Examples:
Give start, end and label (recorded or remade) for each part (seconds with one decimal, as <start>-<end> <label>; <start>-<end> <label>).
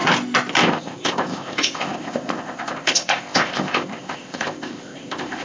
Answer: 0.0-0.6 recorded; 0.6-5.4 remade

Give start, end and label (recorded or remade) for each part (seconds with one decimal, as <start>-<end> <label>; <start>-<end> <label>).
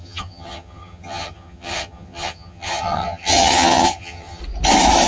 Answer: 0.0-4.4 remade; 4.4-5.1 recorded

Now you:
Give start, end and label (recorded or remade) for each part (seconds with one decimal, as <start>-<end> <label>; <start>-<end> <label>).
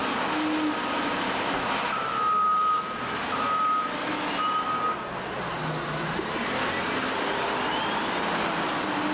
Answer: 0.0-2.5 recorded; 2.5-4.1 remade; 4.1-9.1 recorded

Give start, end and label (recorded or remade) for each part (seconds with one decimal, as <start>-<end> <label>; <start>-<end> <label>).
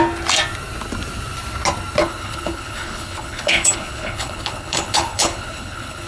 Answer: 0.0-2.0 recorded; 2.0-6.1 remade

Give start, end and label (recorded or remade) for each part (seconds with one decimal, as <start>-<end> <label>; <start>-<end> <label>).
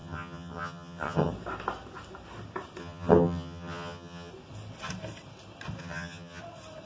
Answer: 0.0-1.3 remade; 1.3-2.8 recorded; 2.8-4.3 remade; 4.3-5.8 recorded; 5.8-6.4 remade; 6.4-6.9 recorded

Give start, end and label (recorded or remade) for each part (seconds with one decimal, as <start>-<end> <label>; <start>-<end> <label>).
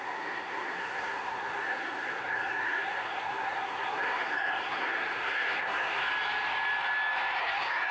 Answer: 0.0-6.0 remade; 6.0-7.4 recorded; 7.4-7.9 remade